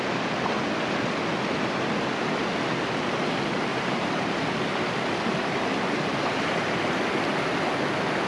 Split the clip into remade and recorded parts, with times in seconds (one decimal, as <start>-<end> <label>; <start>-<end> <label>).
0.0-3.7 recorded; 3.7-4.4 remade; 4.4-8.3 recorded